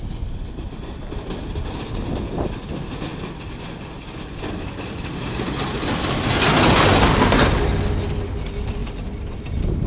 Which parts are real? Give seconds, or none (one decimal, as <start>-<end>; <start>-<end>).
0.0-3.1; 3.6-9.9